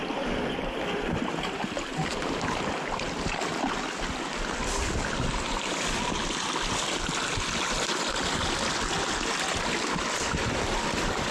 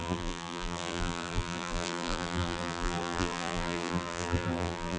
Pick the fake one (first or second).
second